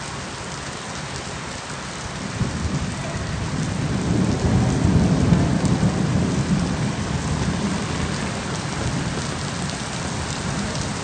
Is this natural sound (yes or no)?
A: yes